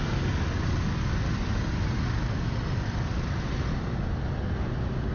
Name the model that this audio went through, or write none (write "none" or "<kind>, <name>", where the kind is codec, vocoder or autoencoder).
none